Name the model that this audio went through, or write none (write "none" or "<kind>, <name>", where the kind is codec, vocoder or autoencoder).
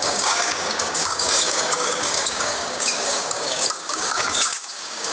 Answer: codec, DAC